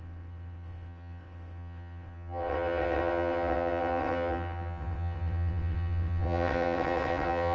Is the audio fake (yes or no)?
yes